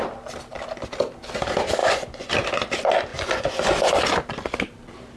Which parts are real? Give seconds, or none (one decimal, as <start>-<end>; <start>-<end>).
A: 0.0-1.8; 2.3-3.1; 3.9-5.2